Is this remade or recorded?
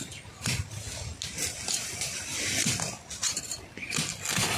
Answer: recorded